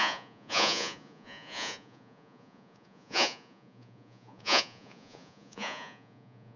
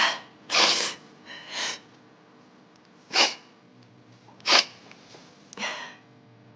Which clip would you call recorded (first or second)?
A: second